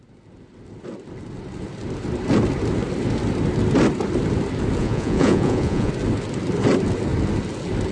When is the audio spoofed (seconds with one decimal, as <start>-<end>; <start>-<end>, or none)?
4.8-5.9